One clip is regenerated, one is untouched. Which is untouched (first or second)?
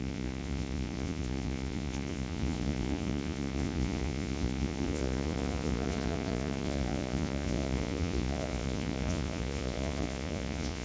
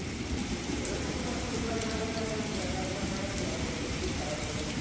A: second